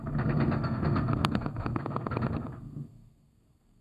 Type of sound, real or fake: fake